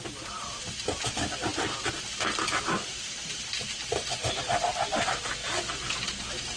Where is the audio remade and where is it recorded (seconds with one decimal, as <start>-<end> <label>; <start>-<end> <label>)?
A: 0.0-6.6 recorded